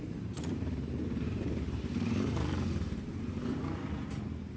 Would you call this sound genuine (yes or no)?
no